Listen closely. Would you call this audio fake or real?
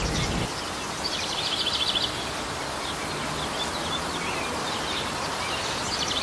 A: real